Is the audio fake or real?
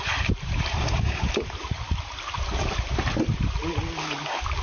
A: real